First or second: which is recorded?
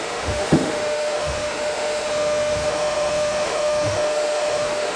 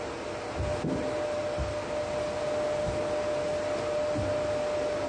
second